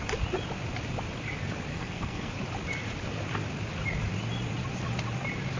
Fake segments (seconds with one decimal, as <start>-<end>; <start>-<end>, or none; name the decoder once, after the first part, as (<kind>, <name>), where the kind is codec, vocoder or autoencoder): 1.7-2.3 (codec, SNAC)